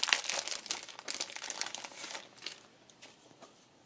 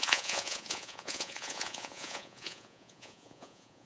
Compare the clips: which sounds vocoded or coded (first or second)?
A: second